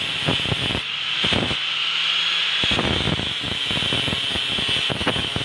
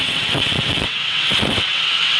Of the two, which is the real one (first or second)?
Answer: first